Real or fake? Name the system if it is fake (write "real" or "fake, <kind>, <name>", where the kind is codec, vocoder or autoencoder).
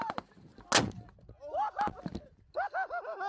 real